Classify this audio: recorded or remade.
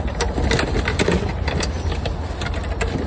recorded